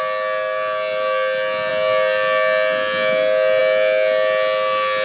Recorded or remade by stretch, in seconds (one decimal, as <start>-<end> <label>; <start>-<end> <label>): 0.0-5.0 recorded